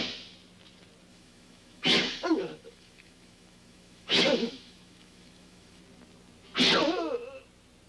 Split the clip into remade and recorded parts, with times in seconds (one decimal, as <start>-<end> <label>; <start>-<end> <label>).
0.0-1.1 recorded; 1.1-5.8 remade; 5.8-7.9 recorded